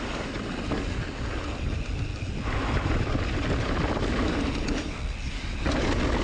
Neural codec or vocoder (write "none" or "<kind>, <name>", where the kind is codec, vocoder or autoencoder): none